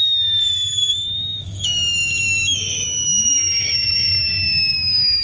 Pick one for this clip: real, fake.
fake